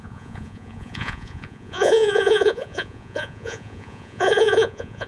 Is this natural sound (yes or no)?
no